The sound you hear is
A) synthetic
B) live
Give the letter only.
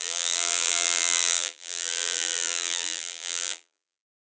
A